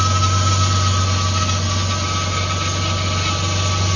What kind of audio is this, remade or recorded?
recorded